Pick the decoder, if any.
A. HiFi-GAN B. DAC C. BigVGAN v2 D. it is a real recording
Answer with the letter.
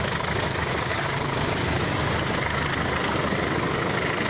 D